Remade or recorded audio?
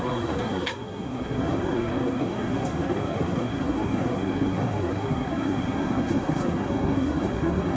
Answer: remade